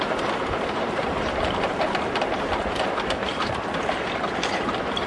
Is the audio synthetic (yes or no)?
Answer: yes